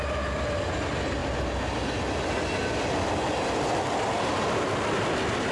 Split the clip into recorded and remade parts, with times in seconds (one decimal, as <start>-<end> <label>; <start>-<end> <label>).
0.0-5.5 recorded

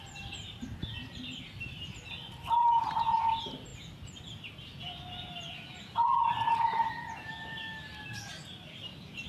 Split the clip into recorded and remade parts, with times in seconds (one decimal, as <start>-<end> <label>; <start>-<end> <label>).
0.0-3.7 remade; 3.7-7.2 recorded; 7.2-9.3 remade